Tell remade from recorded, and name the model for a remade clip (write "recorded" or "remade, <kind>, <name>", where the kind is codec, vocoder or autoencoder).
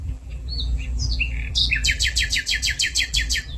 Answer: remade, vocoder, BigVGAN v2